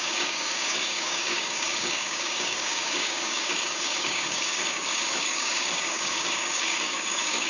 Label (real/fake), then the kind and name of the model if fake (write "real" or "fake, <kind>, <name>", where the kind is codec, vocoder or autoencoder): fake, codec, DAC